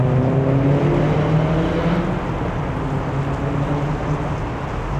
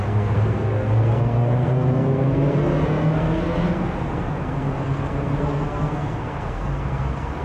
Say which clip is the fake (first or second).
second